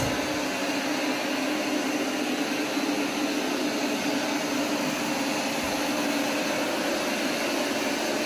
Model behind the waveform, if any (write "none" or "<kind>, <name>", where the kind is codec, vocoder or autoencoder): none